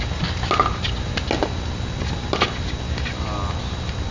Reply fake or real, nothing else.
real